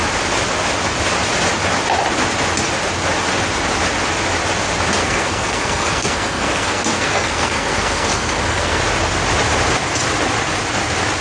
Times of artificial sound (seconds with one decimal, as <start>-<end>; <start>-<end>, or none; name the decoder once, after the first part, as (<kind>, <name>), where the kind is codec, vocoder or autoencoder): 5.0-8.8 (codec, SNAC)